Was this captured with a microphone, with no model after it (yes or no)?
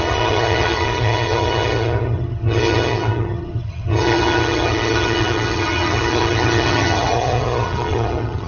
no